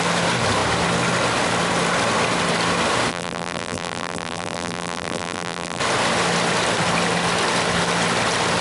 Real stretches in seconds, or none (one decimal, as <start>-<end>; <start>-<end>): 0.0-3.1; 5.8-8.6